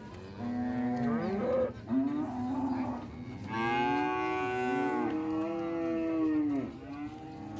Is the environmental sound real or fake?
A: real